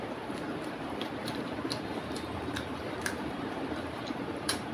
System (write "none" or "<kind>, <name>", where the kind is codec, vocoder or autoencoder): vocoder, BigVGAN v2